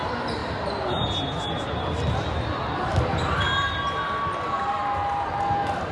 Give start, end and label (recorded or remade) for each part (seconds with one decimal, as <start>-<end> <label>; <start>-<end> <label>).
0.0-5.9 recorded